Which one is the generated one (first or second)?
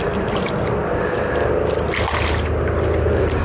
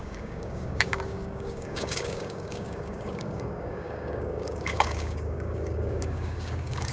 second